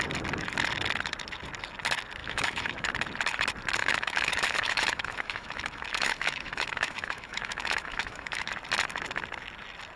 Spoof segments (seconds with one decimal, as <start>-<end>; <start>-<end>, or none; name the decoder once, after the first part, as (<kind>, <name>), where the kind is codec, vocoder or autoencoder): 2.2-2.9 (autoencoder, DAC-VAE); 3.8-8.5